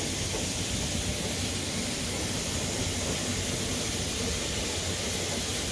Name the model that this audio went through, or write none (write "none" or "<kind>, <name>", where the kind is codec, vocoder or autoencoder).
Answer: none